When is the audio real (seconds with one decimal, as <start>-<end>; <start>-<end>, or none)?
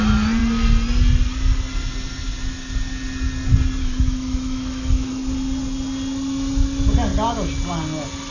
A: 0.0-3.8; 5.1-8.3